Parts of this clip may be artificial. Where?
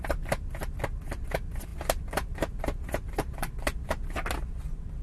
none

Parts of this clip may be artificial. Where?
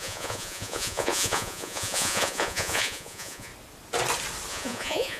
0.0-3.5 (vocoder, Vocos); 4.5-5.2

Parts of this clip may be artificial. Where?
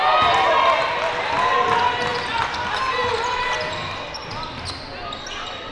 none